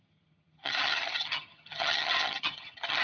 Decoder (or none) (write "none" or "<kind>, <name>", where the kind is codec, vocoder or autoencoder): vocoder, HiFi-GAN